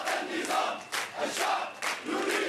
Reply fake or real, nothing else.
real